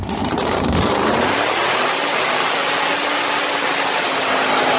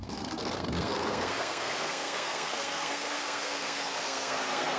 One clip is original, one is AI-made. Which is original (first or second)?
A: first